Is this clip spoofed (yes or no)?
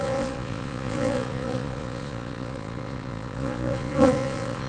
yes